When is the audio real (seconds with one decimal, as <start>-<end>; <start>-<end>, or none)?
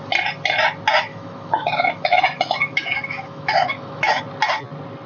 0.0-1.1; 4.2-5.1